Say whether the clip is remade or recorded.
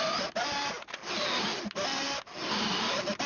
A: recorded